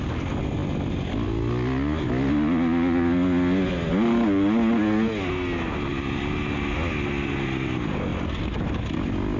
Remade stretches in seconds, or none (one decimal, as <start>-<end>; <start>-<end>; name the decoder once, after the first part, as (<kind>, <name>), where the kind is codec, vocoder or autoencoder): none